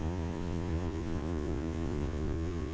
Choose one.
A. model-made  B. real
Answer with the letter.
A